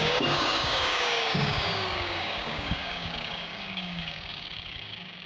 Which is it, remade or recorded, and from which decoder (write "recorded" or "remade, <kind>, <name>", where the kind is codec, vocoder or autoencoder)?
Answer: remade, codec, DAC